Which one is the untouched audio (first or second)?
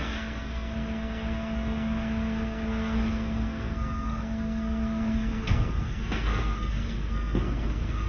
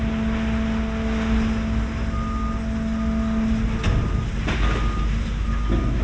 second